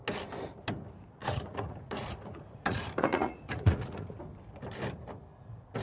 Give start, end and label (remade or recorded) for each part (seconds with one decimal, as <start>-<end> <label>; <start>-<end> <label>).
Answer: 0.0-1.2 recorded; 1.2-4.2 remade; 4.2-5.8 recorded